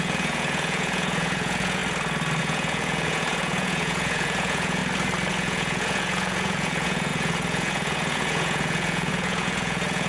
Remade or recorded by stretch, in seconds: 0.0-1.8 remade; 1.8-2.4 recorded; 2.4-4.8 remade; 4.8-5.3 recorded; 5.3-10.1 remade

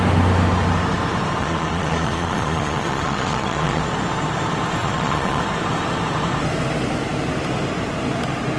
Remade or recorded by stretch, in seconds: 0.0-1.4 recorded; 1.4-3.8 remade; 3.8-4.8 recorded; 4.8-5.4 remade; 5.4-8.6 recorded

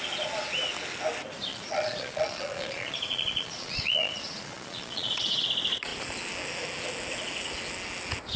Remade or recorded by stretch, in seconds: 0.0-1.5 recorded; 1.5-5.4 remade; 5.4-8.4 recorded

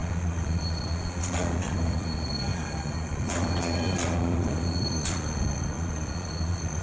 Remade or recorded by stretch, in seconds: 0.0-6.8 remade

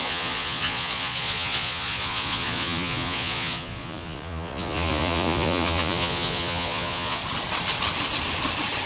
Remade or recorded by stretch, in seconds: 0.0-7.2 remade; 7.2-8.9 recorded

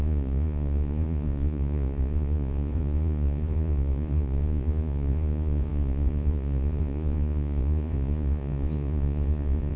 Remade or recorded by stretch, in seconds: 0.0-9.8 remade

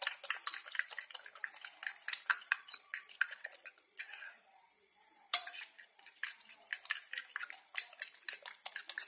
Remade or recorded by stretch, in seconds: 0.0-2.3 recorded; 2.3-6.1 remade; 6.1-9.1 recorded

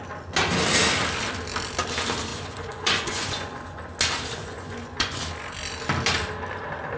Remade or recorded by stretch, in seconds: 0.0-2.3 recorded; 2.3-3.8 remade; 3.8-4.4 recorded; 4.4-5.2 remade; 5.2-7.0 recorded